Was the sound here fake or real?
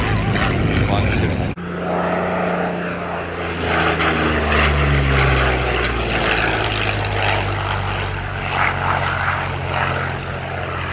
real